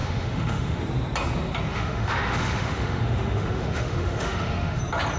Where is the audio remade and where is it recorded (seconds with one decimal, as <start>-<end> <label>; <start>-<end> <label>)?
0.0-0.8 remade; 0.8-1.7 recorded; 1.7-4.8 remade; 4.8-5.2 recorded